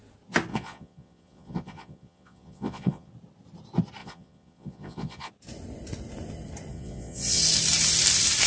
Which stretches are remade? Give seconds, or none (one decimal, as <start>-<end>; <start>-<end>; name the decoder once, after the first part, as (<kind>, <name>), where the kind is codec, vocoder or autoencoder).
0.5-3.1 (vocoder, Vocos); 4.0-5.3; 6.7-7.4